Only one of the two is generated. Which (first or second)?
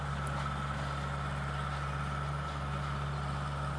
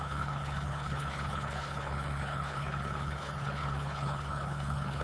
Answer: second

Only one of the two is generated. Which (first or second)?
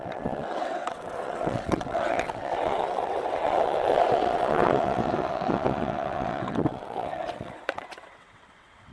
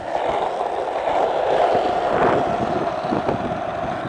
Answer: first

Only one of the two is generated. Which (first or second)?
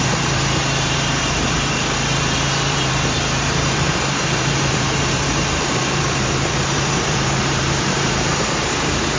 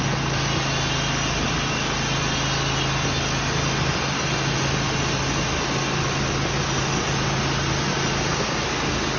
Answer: first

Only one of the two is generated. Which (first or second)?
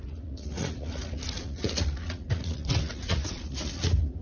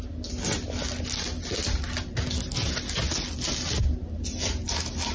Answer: first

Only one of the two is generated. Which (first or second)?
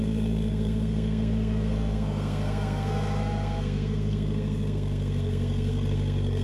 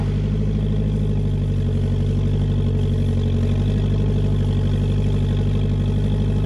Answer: first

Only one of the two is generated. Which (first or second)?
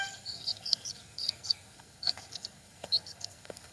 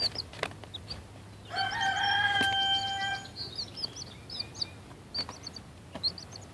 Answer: first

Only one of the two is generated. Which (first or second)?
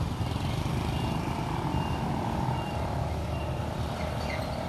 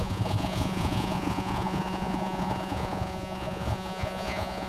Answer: second